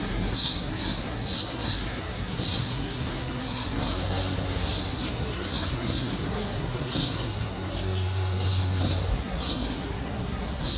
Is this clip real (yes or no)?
no